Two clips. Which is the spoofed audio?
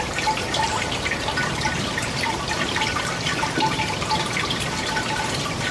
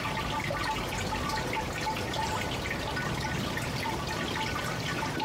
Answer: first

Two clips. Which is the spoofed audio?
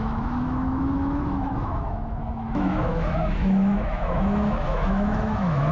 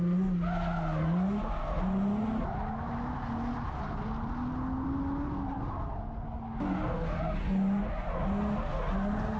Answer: first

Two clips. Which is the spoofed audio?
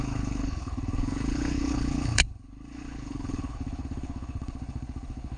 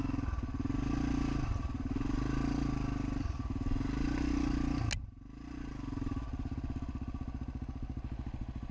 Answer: first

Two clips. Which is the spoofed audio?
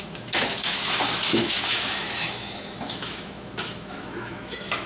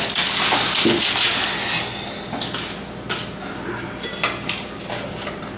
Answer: first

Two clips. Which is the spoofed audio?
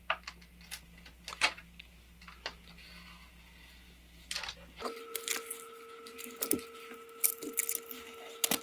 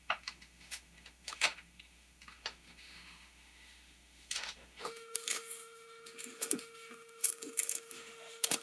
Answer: second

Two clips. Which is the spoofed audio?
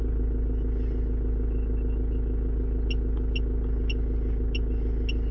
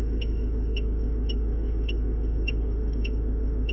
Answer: second